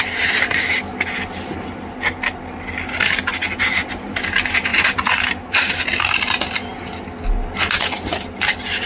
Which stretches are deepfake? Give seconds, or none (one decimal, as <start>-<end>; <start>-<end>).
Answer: 4.7-5.7